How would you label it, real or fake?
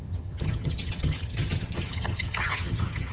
fake